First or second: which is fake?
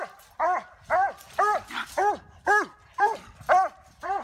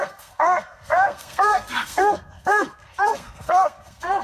second